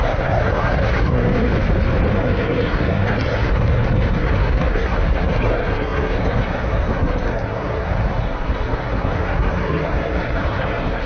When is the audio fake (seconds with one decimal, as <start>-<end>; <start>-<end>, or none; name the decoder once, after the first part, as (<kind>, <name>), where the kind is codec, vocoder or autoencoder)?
0.0-1.5 (codec, SNAC); 2.1-11.1